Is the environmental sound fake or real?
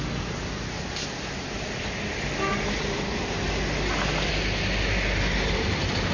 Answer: real